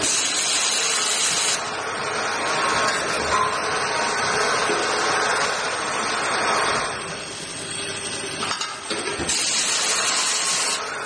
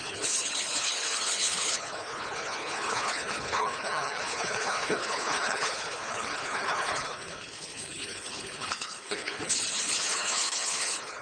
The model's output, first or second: second